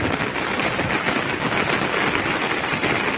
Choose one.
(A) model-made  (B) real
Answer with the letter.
B